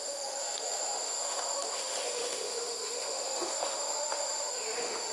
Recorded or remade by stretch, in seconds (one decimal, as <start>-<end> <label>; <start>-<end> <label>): 0.0-5.1 remade